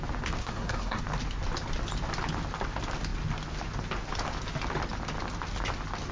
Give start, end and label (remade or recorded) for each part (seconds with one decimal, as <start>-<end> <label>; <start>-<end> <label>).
0.0-0.4 recorded; 0.4-1.0 remade; 1.0-6.1 recorded

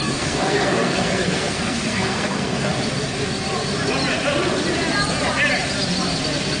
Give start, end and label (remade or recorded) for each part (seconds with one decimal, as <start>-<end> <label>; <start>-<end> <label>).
0.0-2.7 remade; 2.7-6.6 recorded

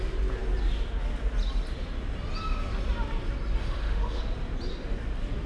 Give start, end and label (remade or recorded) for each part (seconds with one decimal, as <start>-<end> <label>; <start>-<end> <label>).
0.0-3.6 recorded; 3.6-4.2 remade; 4.2-5.5 recorded

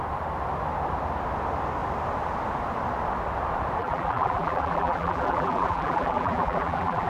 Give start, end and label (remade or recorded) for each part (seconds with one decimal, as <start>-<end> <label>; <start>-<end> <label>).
0.0-3.8 recorded; 3.8-7.1 remade

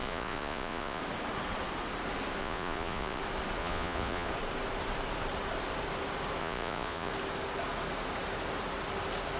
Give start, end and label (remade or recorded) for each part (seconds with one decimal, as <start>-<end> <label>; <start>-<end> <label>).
0.0-1.0 remade; 1.0-2.4 recorded; 2.4-3.2 remade; 3.2-3.6 recorded; 3.6-4.3 remade; 4.3-6.4 recorded; 6.4-7.1 remade; 7.1-9.4 recorded

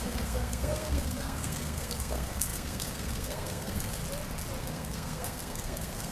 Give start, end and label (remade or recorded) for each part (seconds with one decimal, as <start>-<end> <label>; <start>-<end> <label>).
0.0-4.0 remade; 4.0-4.6 recorded; 4.6-6.1 remade

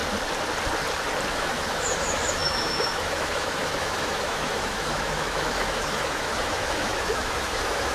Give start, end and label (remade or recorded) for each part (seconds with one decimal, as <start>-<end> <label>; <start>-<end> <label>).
0.0-1.3 recorded; 1.3-7.9 remade